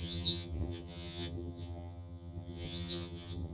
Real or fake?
fake